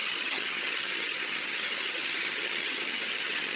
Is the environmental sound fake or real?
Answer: fake